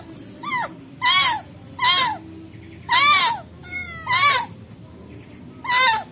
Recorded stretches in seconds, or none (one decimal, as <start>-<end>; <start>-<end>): 0.0-6.1